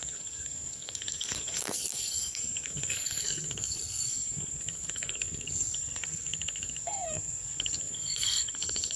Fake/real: fake